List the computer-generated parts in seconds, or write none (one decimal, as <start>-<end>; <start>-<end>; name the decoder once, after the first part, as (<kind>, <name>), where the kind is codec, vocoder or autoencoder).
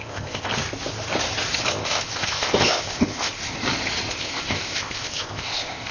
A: 0.0-0.5 (codec, ZipCodec); 1.7-3.4; 4.1-5.9